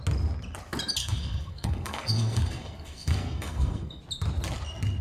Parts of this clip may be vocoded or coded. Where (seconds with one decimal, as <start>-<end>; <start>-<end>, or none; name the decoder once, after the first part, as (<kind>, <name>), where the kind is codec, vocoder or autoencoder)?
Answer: 1.0-4.0 (codec, SNAC)